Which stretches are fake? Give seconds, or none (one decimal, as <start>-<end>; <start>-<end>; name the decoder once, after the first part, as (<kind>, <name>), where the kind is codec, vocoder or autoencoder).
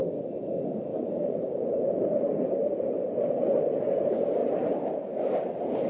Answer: 0.9-1.7 (vocoder, BigVGAN v2)